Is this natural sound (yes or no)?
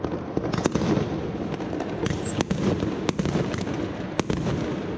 yes